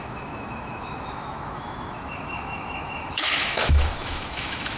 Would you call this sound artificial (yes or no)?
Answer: yes